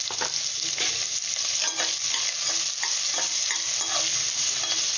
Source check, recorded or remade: recorded